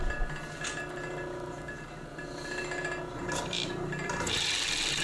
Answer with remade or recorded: recorded